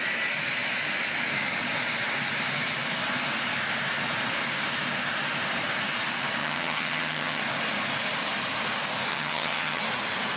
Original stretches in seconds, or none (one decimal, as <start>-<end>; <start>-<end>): 0.0-6.4; 7.4-9.1; 9.8-10.4